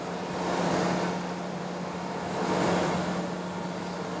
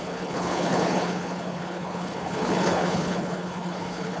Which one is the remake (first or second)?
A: second